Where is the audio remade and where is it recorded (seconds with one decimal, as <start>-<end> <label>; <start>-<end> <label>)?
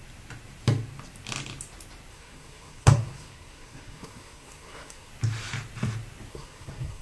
0.0-2.1 recorded; 2.1-5.1 remade; 5.1-6.3 recorded; 6.3-7.0 remade